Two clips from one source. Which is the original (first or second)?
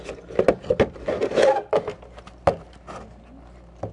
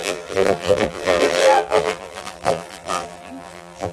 first